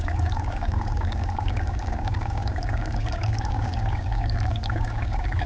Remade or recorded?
remade